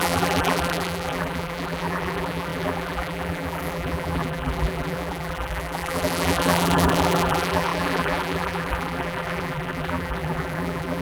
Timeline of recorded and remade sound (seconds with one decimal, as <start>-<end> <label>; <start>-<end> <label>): 0.0-11.0 remade